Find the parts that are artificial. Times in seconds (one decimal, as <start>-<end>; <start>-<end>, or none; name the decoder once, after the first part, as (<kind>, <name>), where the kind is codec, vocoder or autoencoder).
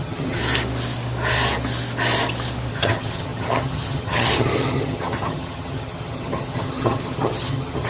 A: 0.0-0.4 (vocoder, HiFi-GAN); 2.7-7.9